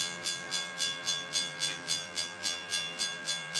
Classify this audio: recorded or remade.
remade